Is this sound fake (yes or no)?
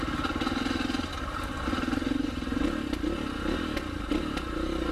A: no